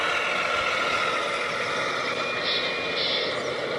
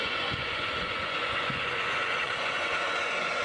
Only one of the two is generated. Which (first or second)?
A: second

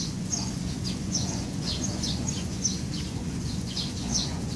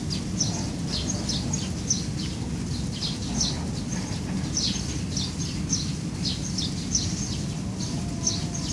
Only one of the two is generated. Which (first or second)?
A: first